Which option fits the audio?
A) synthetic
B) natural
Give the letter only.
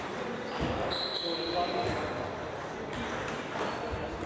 B